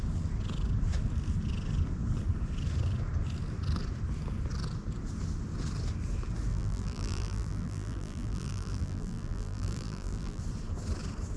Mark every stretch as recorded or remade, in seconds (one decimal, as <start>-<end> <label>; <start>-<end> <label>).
0.0-6.5 recorded; 6.5-10.4 remade; 10.4-11.4 recorded

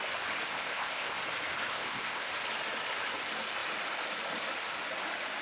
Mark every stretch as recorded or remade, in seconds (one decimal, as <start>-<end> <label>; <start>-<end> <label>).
0.0-0.5 recorded; 0.5-1.2 remade; 1.2-1.7 recorded; 1.7-2.3 remade; 2.3-5.4 recorded

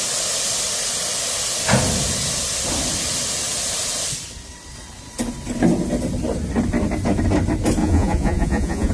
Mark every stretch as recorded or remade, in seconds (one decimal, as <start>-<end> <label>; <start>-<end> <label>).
0.0-7.8 recorded; 7.8-8.9 remade

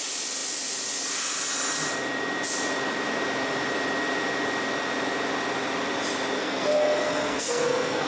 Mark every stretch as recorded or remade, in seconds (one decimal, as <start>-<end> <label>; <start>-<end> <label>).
0.0-6.4 recorded; 6.4-8.1 remade

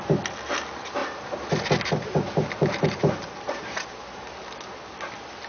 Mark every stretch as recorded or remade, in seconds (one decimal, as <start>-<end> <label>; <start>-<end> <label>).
0.0-1.0 recorded; 1.0-4.3 remade; 4.3-5.5 recorded